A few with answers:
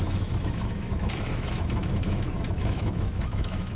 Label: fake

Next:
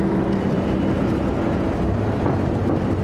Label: real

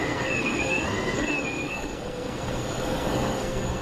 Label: fake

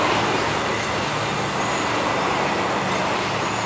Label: real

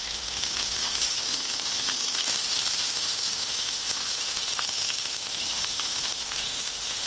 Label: fake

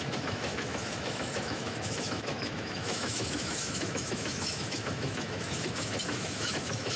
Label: fake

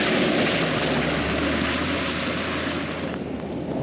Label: real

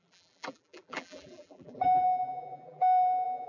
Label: fake